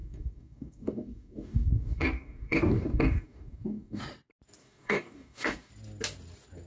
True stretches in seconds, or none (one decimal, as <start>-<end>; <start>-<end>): 4.0-4.6; 5.7-6.7